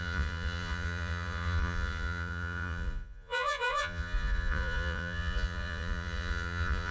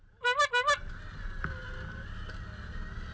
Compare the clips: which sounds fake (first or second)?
first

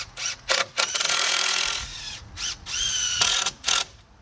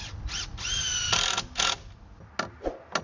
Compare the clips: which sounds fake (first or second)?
first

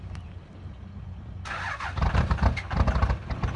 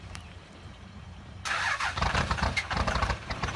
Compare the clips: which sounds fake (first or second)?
second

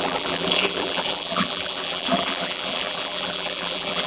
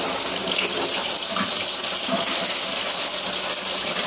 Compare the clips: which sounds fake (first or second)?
first